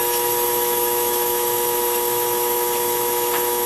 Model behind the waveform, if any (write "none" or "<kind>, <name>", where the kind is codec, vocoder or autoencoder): autoencoder, DAC-VAE